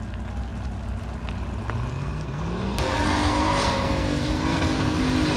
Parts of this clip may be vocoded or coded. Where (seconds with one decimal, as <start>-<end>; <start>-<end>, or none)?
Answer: 1.9-5.0